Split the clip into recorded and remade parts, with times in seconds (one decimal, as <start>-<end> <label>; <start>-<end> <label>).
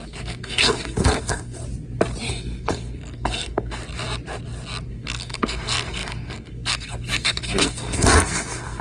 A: 0.0-1.6 remade; 1.6-2.3 recorded; 2.3-3.8 remade; 3.8-4.9 recorded; 4.9-8.8 remade